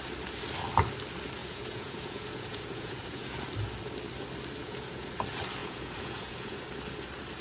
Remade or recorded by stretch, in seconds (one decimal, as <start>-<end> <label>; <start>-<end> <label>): 0.0-1.4 recorded; 1.4-3.4 remade; 3.4-4.6 recorded; 4.6-5.1 remade; 5.1-5.6 recorded; 5.6-6.6 remade; 6.6-7.4 recorded